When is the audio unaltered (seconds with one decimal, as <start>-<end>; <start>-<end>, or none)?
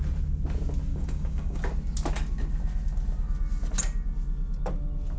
0.0-0.9; 1.6-5.2